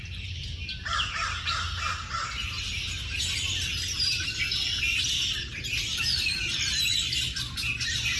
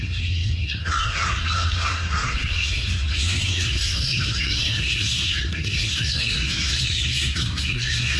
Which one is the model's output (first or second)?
second